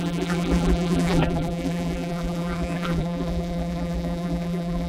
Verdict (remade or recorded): remade